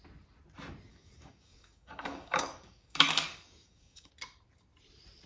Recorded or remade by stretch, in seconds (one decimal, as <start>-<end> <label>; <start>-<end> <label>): 0.0-0.9 recorded; 0.9-4.1 remade; 4.1-5.3 recorded